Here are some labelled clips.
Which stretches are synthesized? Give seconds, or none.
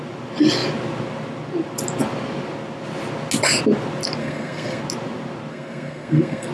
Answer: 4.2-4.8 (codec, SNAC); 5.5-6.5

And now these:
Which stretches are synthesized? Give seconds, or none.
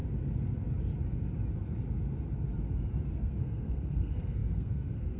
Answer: 3.1-5.2 (codec, SNAC)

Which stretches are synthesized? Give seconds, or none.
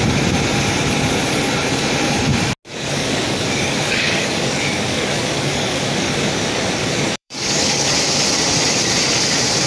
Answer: 2.7-7.9 (codec, DAC)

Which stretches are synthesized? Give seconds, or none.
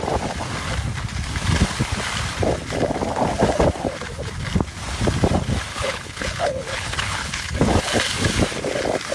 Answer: 5.7-7.7 (codec, HILCodec)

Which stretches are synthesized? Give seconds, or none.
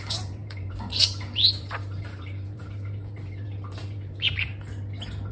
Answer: 0.0-4.5 (vocoder, BigVGAN v2)